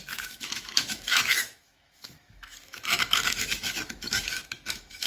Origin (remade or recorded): remade